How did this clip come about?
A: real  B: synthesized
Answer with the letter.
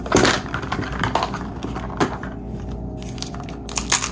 A